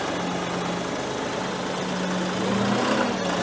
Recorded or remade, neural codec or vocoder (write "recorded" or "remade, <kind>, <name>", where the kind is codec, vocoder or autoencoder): recorded